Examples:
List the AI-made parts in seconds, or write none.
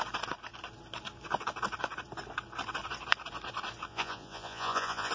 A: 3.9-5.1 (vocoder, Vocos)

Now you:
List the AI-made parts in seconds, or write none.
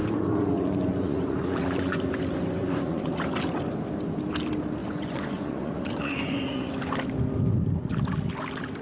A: 0.0-2.1 (vocoder, Vocos); 2.6-3.1; 4.8-6.7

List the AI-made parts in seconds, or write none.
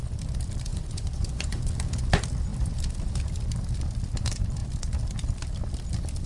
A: 0.7-1.7 (vocoder, Vocos)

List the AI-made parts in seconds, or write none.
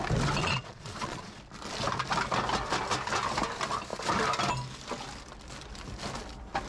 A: 0.4-1.4 (vocoder, Vocos)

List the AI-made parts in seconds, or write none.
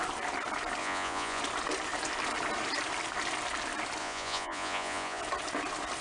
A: 0.8-1.4 (vocoder, Vocos); 4.0-5.2